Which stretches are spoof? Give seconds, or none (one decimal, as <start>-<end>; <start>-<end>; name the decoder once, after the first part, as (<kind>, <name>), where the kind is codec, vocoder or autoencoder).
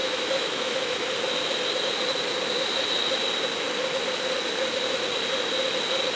0.0-1.1 (autoencoder, DAC-VAE)